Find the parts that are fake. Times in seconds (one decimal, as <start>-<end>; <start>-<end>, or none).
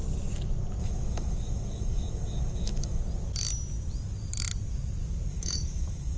0.8-3.0; 5.3-6.2